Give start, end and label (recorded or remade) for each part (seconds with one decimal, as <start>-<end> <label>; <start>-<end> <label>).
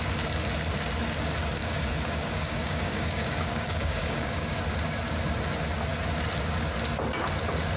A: 0.0-1.6 recorded; 1.6-4.6 remade; 4.6-7.8 recorded